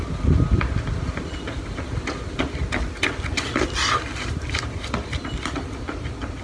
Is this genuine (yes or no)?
yes